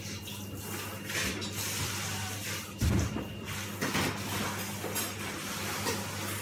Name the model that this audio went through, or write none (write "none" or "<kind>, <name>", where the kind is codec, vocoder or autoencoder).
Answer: none